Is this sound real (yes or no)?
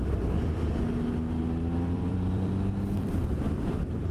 no